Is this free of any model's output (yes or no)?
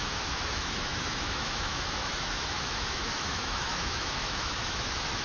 no